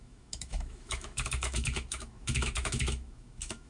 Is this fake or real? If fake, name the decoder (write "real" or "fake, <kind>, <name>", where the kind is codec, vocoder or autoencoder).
fake, autoencoder, DAC-VAE